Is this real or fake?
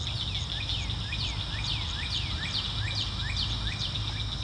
real